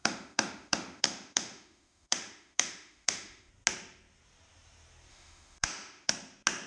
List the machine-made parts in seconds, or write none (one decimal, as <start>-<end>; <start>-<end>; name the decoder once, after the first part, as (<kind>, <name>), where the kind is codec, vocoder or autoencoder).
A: 0.0-3.5 (autoencoder, DAC-VAE); 5.1-6.1